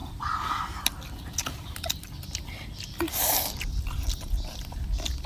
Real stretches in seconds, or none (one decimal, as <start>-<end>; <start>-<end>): 0.0-5.3